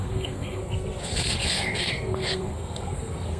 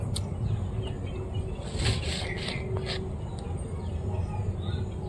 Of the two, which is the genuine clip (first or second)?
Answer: second